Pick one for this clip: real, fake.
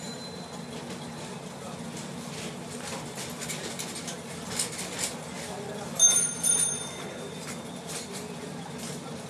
real